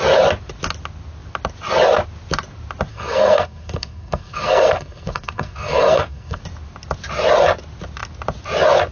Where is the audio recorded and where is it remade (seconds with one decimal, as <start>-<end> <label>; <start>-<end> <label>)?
0.0-2.9 recorded; 2.9-6.4 remade; 6.4-8.9 recorded